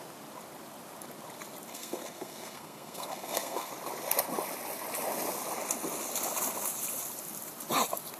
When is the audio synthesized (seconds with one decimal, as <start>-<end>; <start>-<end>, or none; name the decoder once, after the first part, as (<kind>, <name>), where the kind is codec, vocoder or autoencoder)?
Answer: 1.7-3.7 (codec, SNAC)